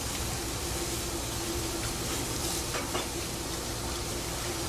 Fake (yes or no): no